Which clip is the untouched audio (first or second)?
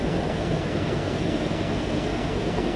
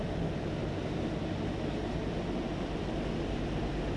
second